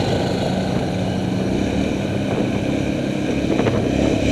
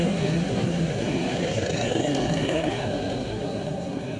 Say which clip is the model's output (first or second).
second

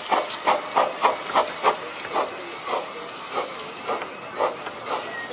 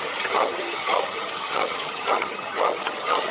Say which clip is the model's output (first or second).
second